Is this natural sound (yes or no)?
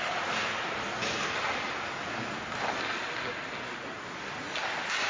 yes